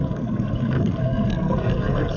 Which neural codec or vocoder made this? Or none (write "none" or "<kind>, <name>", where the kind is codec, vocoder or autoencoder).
codec, SNAC